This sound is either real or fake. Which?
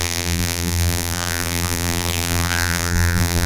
fake